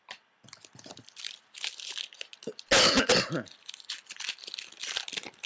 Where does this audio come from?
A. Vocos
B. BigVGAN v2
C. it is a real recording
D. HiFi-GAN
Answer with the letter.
C